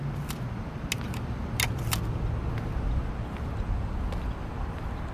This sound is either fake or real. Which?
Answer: real